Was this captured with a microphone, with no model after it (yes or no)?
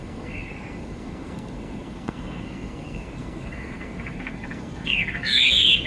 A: no